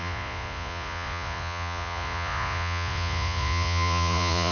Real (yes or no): no